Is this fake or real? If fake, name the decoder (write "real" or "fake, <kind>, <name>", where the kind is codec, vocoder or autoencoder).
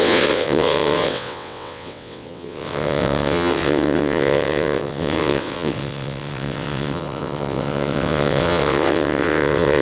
fake, vocoder, WaveNeXt